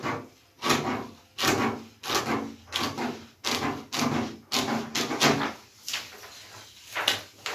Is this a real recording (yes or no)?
yes